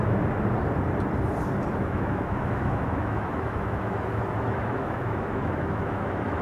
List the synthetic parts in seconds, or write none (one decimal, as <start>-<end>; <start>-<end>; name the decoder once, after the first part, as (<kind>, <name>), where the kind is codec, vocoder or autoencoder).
1.7-6.4 (autoencoder, DAC-VAE)